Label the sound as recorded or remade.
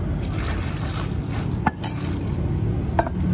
recorded